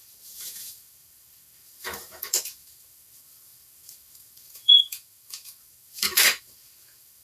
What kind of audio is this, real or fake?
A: fake